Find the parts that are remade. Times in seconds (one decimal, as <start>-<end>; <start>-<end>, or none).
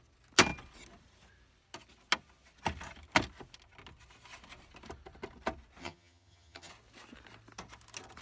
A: 5.8-6.7